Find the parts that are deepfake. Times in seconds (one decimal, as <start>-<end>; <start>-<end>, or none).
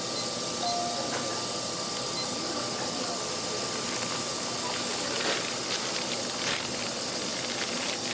none